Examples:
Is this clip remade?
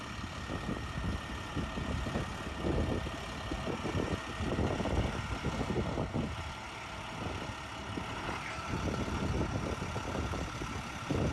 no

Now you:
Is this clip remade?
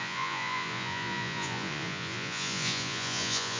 yes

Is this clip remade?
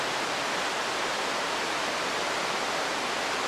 no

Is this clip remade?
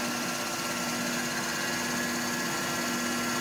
no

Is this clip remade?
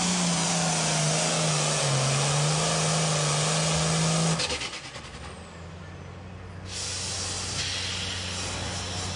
no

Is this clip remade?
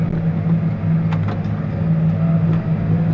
no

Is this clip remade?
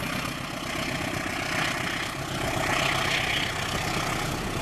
no